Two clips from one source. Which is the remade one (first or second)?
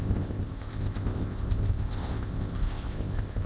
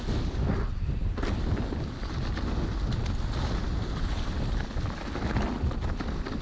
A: first